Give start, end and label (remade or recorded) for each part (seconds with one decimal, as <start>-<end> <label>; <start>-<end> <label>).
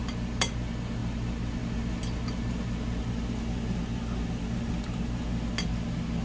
0.0-6.2 recorded